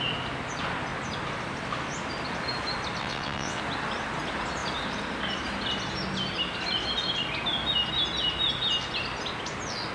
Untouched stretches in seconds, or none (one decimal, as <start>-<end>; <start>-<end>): 0.0-3.0; 3.6-9.9